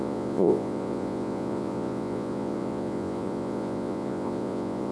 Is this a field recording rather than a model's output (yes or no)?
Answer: no